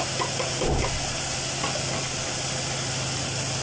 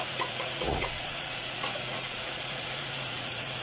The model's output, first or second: second